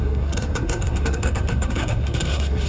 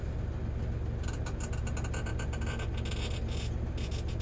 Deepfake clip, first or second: first